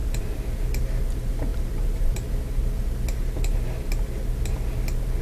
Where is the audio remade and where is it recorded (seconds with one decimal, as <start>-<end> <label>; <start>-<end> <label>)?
0.0-0.6 remade; 0.6-1.5 recorded; 1.5-4.6 remade; 4.6-5.2 recorded